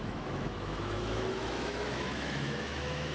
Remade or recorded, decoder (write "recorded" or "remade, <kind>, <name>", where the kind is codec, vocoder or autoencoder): remade, autoencoder, DAC-VAE